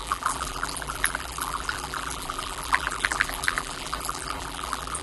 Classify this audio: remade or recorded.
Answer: remade